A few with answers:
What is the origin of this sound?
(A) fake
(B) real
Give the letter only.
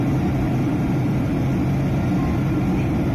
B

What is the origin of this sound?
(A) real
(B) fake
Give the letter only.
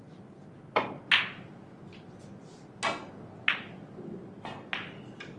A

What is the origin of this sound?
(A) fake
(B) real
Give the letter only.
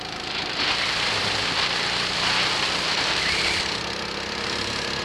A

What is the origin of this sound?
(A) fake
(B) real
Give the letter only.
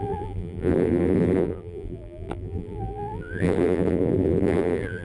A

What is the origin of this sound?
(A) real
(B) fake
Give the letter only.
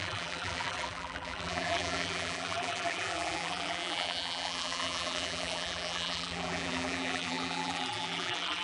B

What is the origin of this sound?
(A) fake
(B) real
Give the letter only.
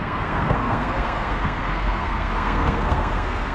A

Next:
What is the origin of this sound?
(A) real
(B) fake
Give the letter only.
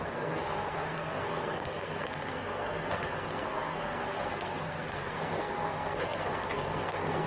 B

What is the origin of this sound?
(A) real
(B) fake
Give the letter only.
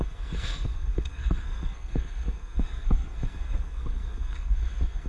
B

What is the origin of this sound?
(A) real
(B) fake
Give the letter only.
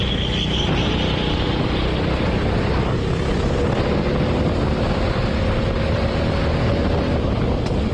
A